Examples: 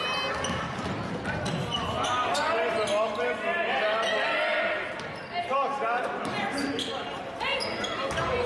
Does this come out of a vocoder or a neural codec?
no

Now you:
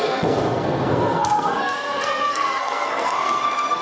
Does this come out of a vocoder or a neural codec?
yes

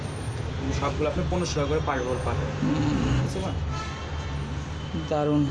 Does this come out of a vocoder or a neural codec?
no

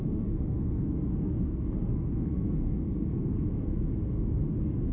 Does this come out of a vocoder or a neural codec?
yes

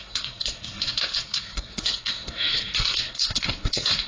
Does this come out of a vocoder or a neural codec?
yes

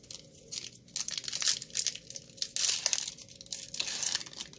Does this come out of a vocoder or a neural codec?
no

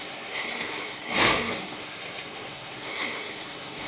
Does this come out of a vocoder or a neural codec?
yes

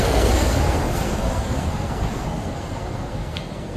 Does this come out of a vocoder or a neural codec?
yes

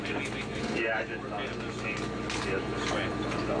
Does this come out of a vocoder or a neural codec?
no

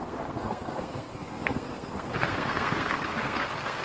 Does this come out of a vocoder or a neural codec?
yes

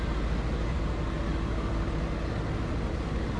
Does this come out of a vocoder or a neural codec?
no